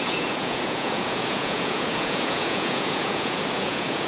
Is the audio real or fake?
fake